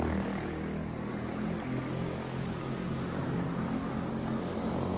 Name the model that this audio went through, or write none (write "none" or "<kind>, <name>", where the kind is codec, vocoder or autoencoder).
codec, DAC